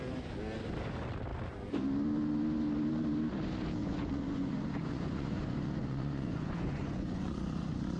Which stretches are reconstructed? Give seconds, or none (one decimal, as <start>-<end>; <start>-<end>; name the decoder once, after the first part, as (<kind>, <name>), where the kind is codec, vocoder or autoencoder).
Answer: 3.8-8.0 (vocoder, Vocos)